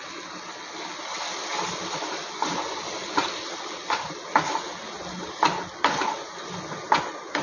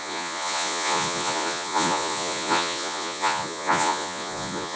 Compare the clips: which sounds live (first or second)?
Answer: first